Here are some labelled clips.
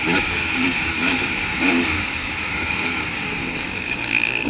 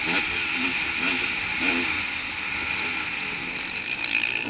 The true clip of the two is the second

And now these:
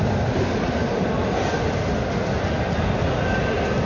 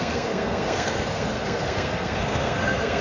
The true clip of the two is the first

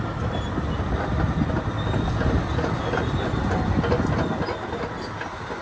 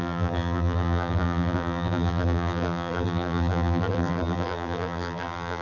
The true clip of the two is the first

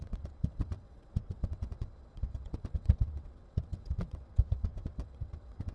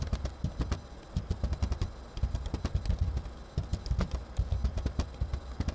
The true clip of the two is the second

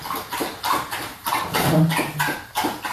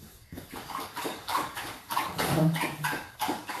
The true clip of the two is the first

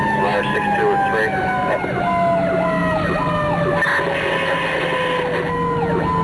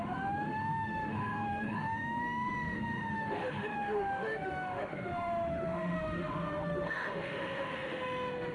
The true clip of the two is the first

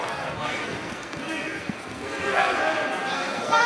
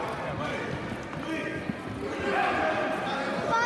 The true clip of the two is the second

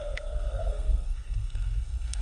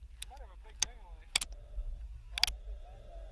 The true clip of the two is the second